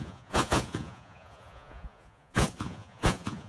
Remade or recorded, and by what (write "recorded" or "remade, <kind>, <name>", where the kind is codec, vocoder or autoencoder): remade, vocoder, Vocos